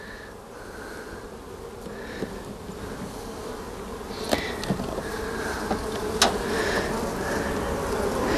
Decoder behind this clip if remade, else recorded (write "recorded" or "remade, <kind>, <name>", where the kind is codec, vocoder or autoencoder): recorded